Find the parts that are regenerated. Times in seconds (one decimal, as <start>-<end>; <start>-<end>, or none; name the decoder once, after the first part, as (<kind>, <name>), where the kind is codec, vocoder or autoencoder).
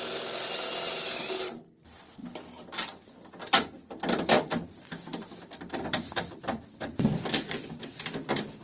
2.2-3.3 (vocoder, BigVGAN v2); 5.1-7.5